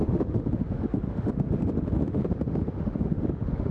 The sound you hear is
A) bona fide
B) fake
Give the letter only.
B